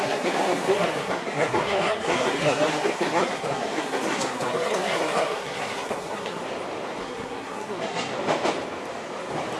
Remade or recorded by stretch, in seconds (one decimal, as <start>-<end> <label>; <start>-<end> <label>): 0.0-6.4 remade; 6.4-7.0 recorded; 7.0-8.1 remade; 8.1-9.6 recorded